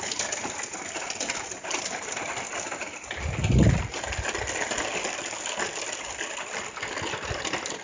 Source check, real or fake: real